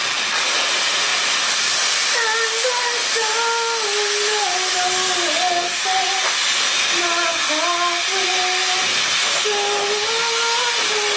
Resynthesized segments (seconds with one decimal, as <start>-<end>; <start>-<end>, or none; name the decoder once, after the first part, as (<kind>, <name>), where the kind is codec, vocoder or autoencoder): none